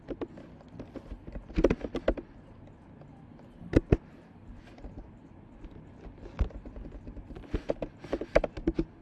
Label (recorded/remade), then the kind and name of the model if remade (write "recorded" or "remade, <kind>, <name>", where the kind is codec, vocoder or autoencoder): recorded